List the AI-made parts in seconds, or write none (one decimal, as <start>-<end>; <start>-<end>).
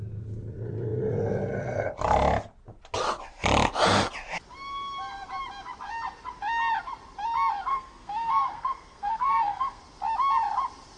7.7-9.8